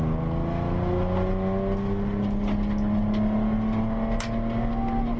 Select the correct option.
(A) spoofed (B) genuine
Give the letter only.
B